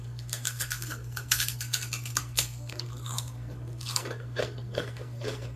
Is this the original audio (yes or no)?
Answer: no